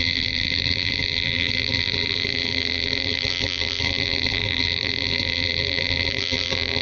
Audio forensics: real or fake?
fake